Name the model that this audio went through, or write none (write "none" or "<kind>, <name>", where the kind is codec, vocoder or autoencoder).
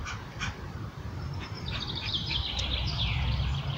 vocoder, BigVGAN v2